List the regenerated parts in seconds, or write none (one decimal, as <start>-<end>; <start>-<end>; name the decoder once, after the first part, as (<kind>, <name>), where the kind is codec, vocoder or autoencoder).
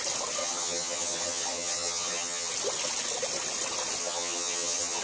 0.4-2.5 (vocoder, HiFi-GAN); 4.0-5.0